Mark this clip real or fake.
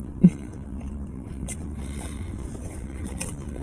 fake